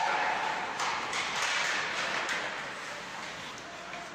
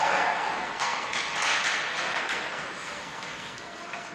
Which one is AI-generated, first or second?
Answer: second